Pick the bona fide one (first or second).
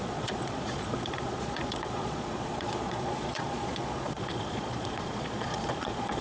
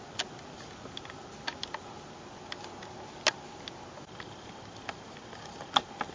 second